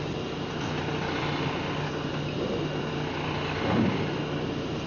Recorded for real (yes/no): yes